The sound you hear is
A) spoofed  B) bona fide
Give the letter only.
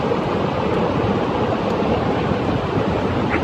B